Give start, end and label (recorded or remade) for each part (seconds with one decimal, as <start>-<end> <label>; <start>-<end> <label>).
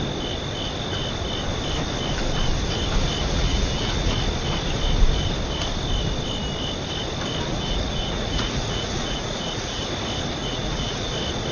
0.0-3.2 recorded; 3.2-4.1 remade; 4.1-7.5 recorded; 7.5-9.8 remade; 9.8-10.4 recorded; 10.4-11.1 remade; 11.1-11.5 recorded